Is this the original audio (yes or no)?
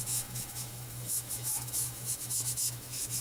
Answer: no